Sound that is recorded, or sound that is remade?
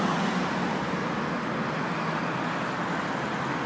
recorded